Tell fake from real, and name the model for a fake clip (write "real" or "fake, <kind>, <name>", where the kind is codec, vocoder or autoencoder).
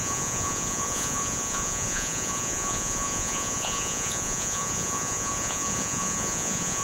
fake, vocoder, Vocos